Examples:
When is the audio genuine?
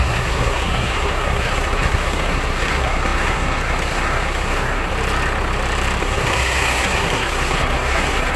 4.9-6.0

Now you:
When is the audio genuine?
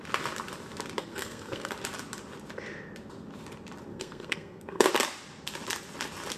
0.0-1.0; 1.7-3.9; 4.9-6.4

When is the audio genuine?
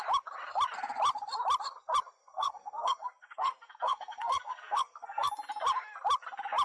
0.0-2.2; 5.3-6.6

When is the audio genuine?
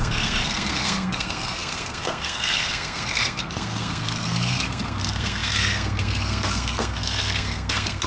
none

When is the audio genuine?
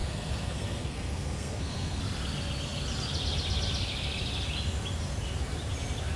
2.0-6.2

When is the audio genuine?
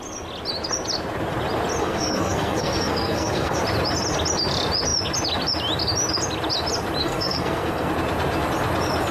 0.0-1.8; 3.6-7.0; 7.9-9.1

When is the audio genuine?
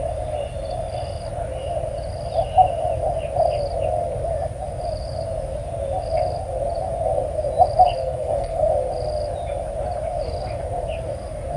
0.0-8.0; 8.7-11.6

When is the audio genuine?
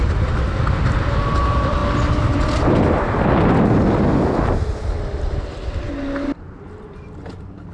0.0-7.7